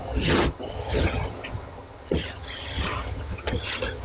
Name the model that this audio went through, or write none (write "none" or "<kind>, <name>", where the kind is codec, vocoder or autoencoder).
vocoder, HiFi-GAN